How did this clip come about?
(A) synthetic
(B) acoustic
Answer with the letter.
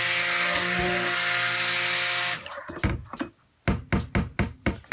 B